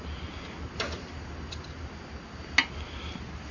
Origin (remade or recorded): recorded